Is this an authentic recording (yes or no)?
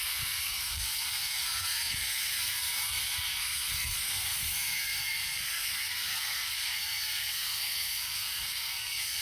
no